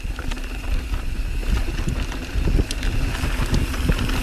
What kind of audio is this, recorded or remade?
recorded